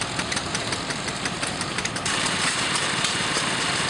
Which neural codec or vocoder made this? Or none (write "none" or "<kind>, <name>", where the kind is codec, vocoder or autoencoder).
vocoder, BigVGAN v2